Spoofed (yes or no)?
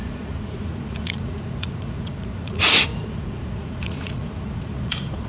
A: yes